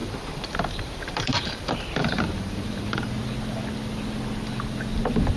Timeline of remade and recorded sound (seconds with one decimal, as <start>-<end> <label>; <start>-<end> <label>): 0.0-3.2 remade; 3.2-5.4 recorded